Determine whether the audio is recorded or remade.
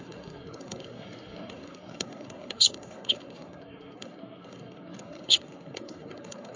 remade